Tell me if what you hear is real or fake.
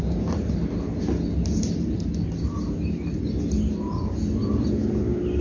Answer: real